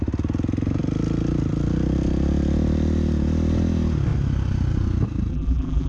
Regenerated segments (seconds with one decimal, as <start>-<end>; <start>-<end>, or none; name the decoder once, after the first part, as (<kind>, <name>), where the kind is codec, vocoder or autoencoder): 5.3-5.9 (vocoder, BigVGAN v2)